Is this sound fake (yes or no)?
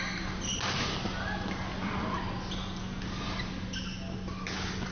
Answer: no